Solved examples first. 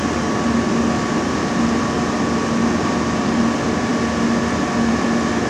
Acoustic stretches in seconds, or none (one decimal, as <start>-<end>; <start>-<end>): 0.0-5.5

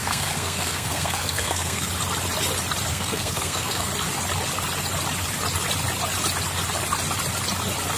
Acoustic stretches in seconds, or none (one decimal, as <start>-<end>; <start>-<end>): 1.9-2.9; 3.9-8.0

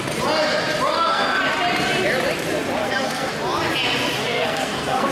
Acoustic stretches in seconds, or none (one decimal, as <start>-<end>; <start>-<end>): 0.0-0.9; 1.4-2.8; 3.3-4.2

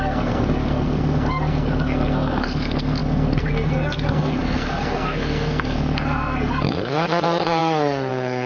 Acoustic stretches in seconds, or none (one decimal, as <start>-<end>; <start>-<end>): none